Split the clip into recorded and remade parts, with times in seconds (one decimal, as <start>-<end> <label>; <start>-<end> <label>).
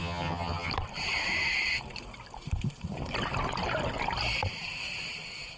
0.0-0.7 remade; 0.7-5.6 recorded